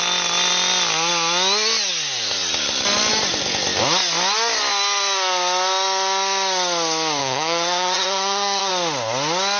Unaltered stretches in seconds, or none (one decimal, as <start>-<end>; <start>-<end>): 0.0-7.2; 8.7-9.6